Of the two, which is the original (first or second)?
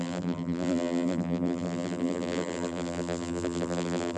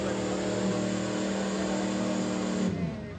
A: second